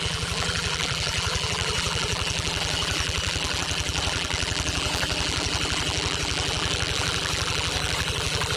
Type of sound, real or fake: fake